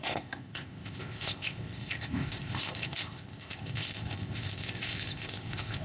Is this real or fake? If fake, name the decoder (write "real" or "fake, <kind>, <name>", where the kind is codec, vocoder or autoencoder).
fake, codec, ZipCodec